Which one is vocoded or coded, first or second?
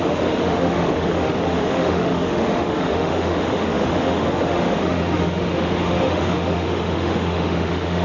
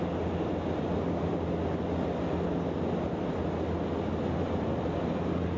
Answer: first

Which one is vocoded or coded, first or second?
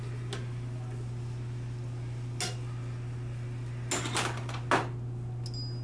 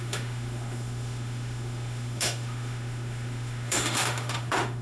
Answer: second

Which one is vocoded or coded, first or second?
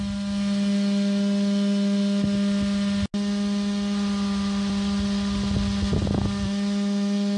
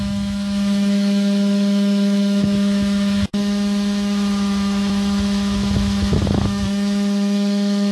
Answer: second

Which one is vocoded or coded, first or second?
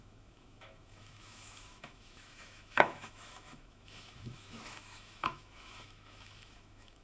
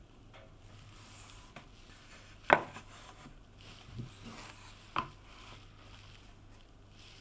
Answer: first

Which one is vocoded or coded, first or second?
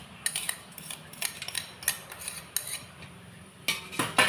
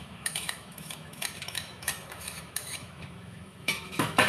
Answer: second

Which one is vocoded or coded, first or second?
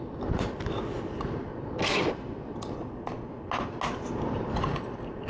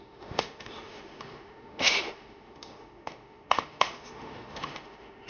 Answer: second